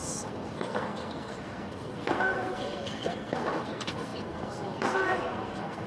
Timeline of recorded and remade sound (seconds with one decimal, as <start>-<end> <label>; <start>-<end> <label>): 0.0-5.9 remade